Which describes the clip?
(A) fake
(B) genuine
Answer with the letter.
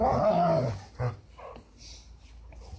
B